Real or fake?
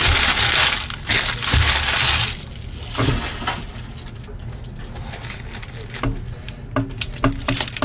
real